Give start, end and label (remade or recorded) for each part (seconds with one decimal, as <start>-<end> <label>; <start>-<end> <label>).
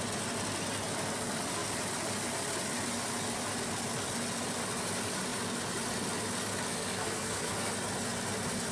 0.0-6.7 recorded; 6.7-7.7 remade; 7.7-8.7 recorded